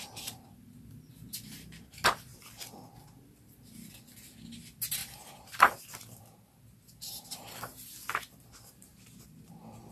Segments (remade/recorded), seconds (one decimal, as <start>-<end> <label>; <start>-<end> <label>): 0.0-5.0 recorded; 5.0-5.7 remade; 5.7-8.9 recorded; 8.9-9.5 remade; 9.5-9.9 recorded